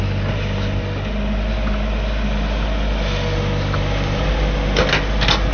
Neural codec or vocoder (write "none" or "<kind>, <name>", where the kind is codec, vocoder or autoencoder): none